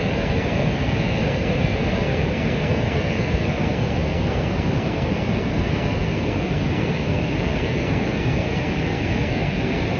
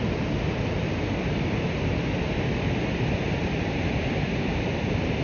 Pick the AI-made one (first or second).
first